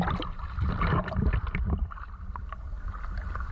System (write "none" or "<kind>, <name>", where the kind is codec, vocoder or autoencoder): vocoder, BigVGAN v2